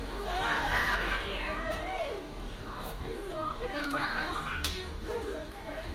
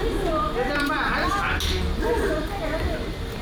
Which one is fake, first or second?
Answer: first